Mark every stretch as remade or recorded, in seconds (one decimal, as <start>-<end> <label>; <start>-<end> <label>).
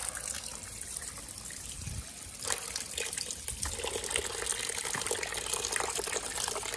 0.0-6.8 recorded